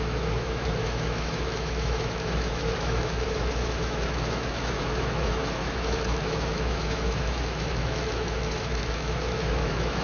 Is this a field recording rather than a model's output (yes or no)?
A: no